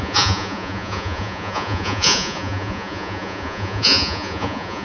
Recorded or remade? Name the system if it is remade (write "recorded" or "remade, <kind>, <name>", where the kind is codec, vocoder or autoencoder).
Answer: remade, vocoder, Vocos